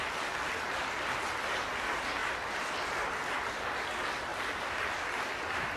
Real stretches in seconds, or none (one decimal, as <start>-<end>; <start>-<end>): 0.0-5.8